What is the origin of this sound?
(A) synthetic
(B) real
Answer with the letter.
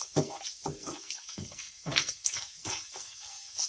A